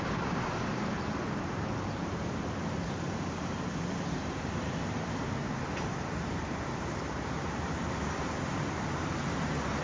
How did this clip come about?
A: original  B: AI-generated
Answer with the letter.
B